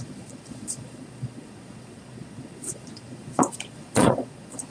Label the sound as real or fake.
fake